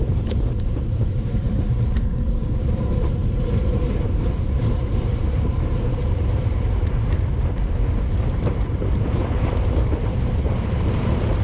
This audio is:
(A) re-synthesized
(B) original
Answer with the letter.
A